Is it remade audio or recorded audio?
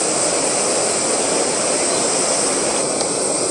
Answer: recorded